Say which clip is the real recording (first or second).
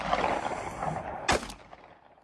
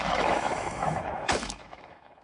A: first